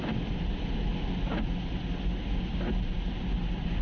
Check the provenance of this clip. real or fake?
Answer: real